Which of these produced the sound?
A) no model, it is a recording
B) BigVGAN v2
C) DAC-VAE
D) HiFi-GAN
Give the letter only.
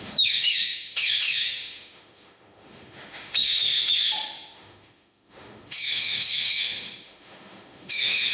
C